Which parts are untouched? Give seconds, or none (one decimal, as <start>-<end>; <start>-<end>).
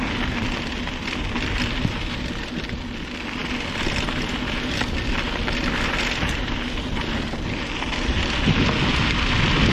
0.0-9.7